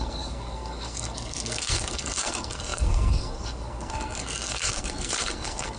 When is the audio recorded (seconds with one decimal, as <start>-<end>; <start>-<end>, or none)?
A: none